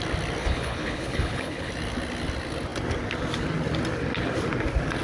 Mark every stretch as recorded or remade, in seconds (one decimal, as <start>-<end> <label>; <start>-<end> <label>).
0.0-0.4 recorded; 0.4-1.7 remade; 1.7-5.0 recorded